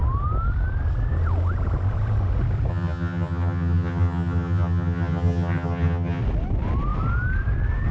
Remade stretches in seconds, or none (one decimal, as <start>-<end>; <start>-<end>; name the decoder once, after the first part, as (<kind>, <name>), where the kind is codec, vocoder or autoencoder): 2.7-6.2 (vocoder, HiFi-GAN)